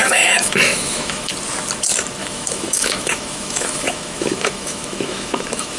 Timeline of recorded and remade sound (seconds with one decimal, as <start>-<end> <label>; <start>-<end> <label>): 0.0-1.3 remade; 1.3-2.2 recorded; 2.2-5.8 remade